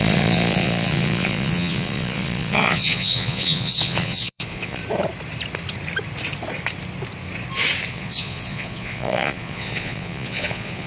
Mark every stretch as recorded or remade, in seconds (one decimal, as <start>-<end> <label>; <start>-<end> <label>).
0.0-4.8 remade; 4.8-7.9 recorded; 7.9-10.9 remade